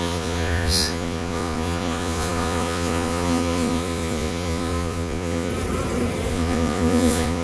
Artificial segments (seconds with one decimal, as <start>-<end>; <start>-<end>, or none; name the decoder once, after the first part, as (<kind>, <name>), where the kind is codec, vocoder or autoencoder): 0.0-5.5 (vocoder, Vocos); 6.3-7.4